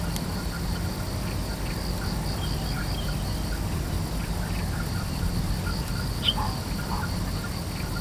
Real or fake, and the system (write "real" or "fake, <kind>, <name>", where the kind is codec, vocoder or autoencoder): real